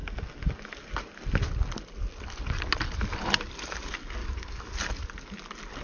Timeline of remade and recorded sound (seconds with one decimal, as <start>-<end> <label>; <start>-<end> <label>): 0.0-4.2 recorded; 4.2-4.7 remade; 4.7-5.8 recorded